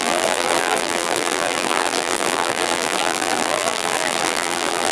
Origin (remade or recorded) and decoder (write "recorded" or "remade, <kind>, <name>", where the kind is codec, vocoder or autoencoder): remade, vocoder, BigVGAN v2